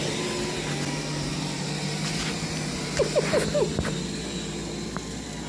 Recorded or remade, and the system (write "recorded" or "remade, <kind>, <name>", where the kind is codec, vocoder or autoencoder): recorded